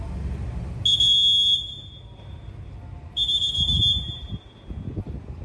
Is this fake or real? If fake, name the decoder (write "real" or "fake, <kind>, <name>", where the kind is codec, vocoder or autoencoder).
real